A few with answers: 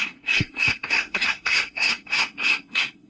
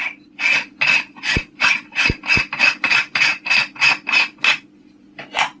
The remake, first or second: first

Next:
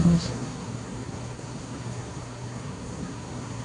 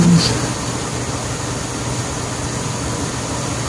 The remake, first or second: first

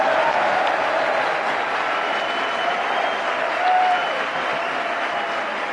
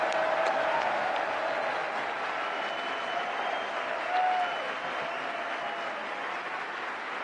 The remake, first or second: first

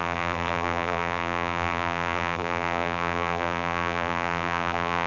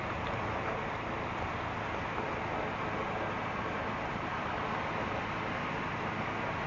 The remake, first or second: first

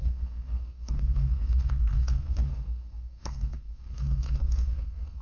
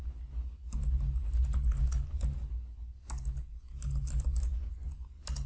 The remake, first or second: first